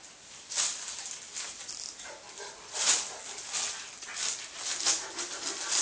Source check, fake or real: real